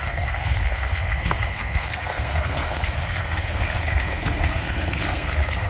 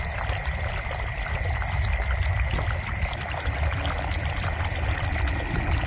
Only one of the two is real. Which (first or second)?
second